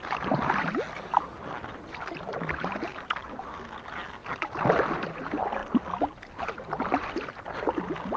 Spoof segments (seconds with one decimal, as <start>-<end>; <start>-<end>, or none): none